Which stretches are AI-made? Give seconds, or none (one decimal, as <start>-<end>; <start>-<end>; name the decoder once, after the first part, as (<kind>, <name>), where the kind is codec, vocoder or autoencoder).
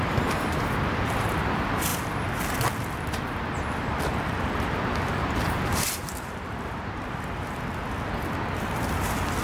1.9-2.5 (vocoder, BigVGAN v2); 5.2-7.6